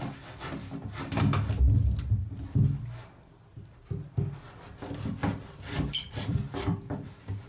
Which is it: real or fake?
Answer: real